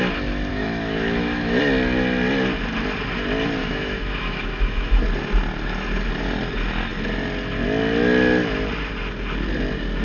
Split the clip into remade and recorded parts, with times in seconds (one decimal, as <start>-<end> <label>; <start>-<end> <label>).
0.0-0.5 recorded; 0.5-1.6 remade; 1.6-3.6 recorded; 3.6-5.0 remade; 5.0-10.0 recorded